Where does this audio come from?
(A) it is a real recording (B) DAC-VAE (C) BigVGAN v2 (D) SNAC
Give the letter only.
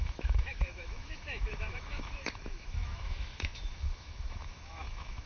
B